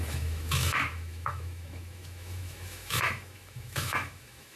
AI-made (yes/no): yes